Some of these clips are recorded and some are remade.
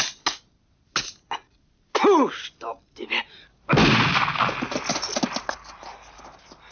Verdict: recorded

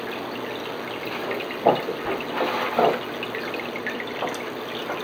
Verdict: recorded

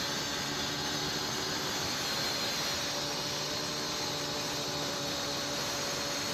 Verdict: recorded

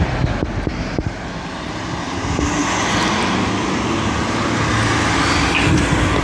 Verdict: recorded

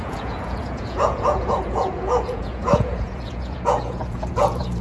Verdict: remade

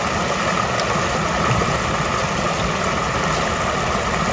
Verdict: recorded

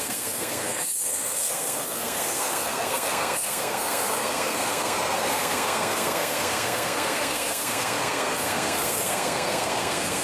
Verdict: remade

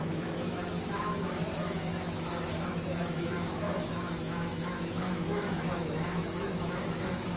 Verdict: remade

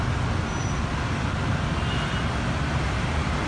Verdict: recorded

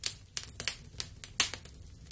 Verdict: recorded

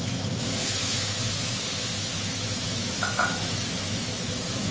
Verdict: remade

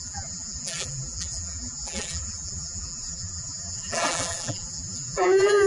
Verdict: remade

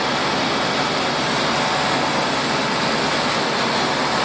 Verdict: recorded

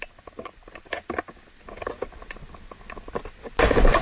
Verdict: recorded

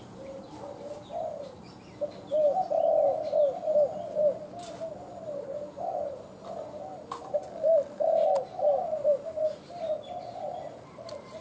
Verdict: recorded